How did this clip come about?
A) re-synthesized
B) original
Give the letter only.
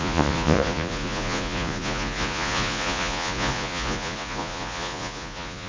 A